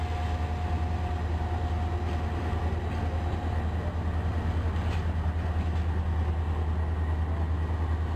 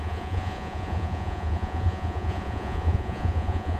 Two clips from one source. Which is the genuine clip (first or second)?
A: first